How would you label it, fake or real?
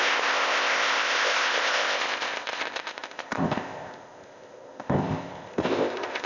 fake